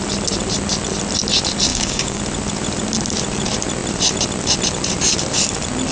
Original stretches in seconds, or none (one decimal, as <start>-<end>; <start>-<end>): 0.0-1.7; 2.2-5.9